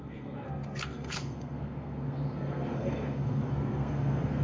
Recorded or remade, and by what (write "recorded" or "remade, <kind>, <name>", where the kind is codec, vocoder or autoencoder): remade, codec, SNAC